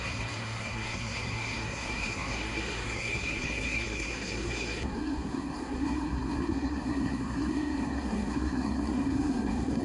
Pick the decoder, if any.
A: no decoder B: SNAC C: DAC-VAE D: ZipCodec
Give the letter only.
B